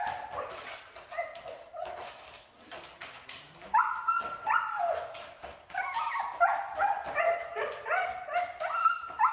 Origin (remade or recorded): recorded